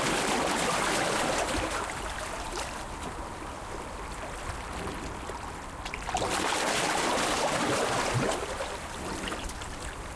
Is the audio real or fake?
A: real